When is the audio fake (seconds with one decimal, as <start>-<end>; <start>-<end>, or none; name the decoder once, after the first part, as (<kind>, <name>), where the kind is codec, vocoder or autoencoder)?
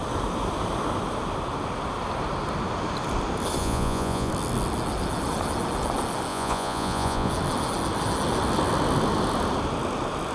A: 3.6-4.3 (vocoder, Vocos); 6.3-7.3